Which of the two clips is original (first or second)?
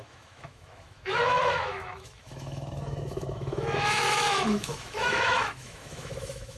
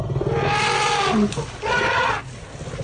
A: second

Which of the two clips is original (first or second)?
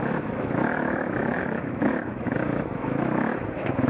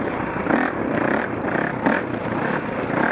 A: second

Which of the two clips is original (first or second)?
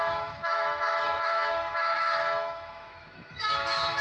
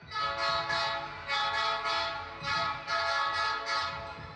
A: second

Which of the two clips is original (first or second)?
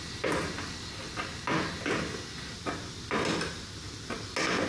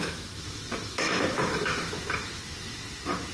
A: first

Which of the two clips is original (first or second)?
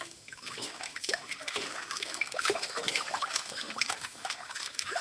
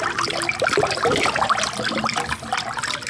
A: second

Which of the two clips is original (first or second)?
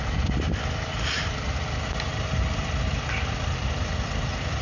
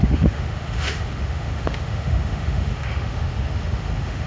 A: first